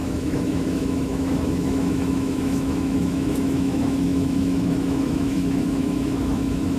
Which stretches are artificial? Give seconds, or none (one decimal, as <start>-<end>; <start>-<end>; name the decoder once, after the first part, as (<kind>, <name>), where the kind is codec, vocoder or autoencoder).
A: 0.0-6.8 (autoencoder, DAC-VAE)